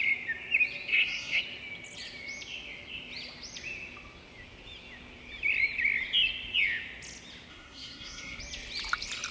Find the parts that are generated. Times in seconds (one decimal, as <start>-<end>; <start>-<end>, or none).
0.9-1.4; 7.5-8.4